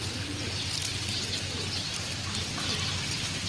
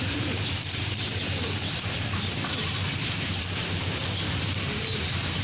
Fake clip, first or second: second